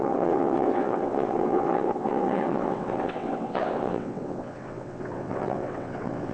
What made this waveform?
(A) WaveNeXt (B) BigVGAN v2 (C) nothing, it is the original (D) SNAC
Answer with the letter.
A